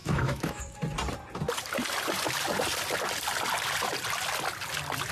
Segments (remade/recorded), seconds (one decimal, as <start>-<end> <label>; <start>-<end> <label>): 0.0-0.6 remade; 0.6-5.1 recorded